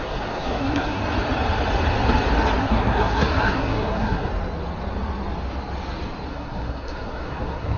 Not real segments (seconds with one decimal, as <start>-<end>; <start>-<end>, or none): 0.0-1.0; 2.6-4.3; 6.3-7.8